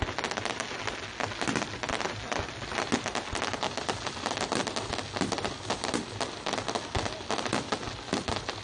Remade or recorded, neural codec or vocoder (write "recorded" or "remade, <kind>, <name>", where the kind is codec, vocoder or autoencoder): recorded